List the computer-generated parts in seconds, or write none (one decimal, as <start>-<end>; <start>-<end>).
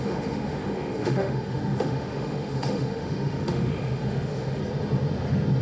0.0-4.6